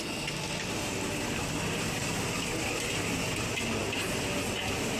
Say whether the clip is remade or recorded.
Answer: recorded